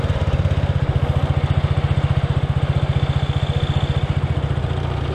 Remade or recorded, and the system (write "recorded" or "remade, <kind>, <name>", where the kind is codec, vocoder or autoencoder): recorded